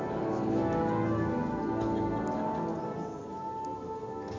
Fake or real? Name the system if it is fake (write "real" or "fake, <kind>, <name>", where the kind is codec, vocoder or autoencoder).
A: real